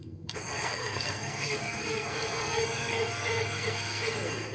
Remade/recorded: remade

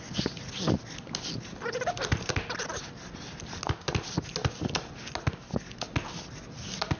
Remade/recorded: recorded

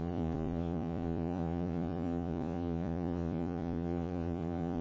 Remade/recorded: remade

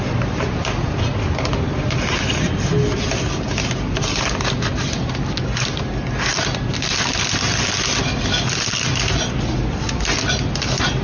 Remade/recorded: recorded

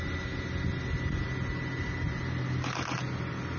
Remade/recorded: recorded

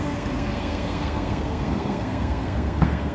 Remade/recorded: remade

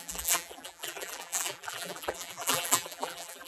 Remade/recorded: remade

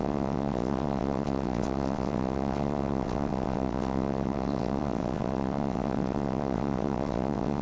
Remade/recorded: remade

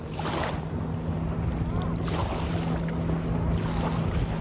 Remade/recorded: recorded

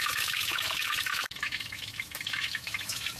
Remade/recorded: remade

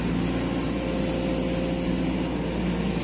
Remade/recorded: recorded